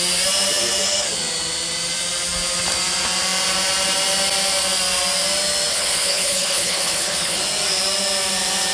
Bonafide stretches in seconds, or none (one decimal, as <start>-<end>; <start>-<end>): 0.0-5.7; 7.4-8.7